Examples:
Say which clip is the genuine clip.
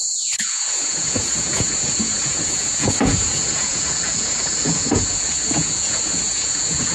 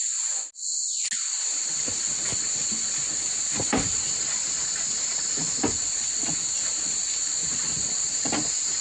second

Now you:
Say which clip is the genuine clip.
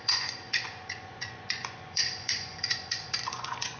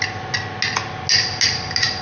second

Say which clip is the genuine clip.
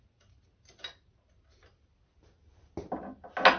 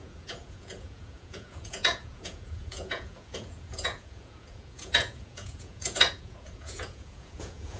first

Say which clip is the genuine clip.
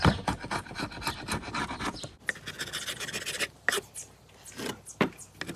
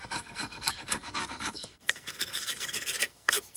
first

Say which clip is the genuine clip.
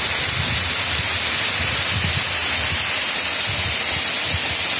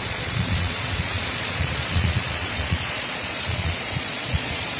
first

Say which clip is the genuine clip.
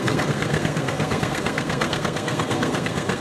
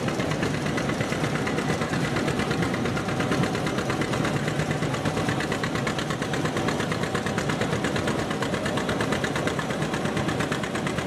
second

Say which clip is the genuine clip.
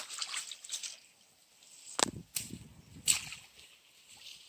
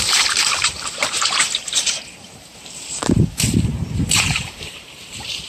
first